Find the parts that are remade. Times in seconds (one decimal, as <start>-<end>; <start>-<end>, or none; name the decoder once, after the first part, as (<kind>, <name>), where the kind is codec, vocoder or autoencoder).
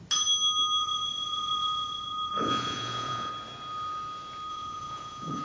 0.8-3.3 (vocoder, Vocos); 4.5-5.4